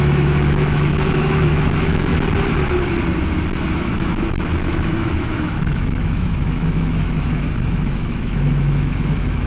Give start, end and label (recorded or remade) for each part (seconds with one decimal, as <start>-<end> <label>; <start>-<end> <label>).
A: 0.0-2.1 remade; 2.1-3.7 recorded; 3.7-9.5 remade